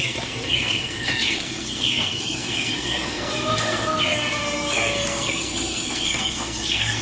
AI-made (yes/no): yes